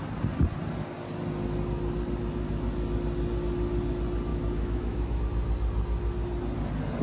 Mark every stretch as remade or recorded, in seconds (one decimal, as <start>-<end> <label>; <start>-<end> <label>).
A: 0.0-4.3 recorded; 4.3-5.2 remade; 5.2-7.0 recorded